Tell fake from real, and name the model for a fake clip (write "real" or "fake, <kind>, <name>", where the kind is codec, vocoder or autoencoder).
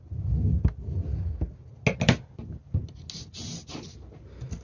real